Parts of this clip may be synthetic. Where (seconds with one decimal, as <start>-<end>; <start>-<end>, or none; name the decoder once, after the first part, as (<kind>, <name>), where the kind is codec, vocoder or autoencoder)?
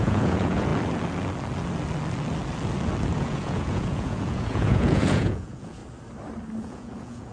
0.0-0.7 (vocoder, Vocos); 3.1-5.8; 6.6-7.3